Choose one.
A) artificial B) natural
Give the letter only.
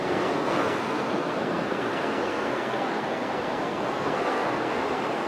A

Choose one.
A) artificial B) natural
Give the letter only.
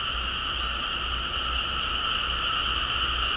B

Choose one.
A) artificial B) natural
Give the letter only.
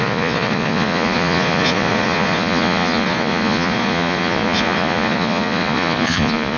A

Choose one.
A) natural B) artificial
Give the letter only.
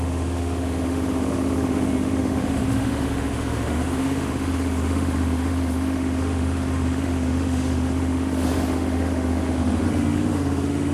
B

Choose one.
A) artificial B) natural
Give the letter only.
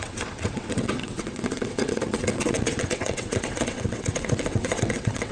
A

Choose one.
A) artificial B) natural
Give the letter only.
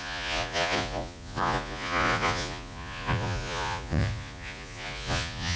A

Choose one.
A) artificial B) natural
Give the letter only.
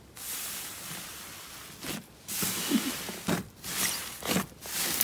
A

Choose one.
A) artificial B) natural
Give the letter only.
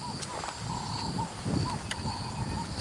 B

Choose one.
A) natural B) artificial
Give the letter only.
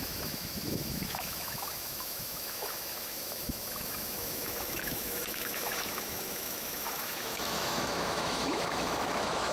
B